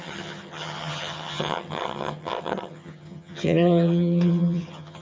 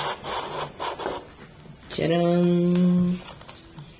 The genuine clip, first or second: second